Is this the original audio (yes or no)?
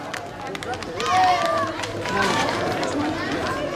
yes